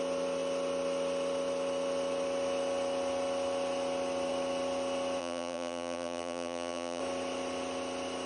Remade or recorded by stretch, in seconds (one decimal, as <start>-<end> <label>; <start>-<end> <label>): 0.0-5.2 recorded; 5.2-7.0 remade; 7.0-8.3 recorded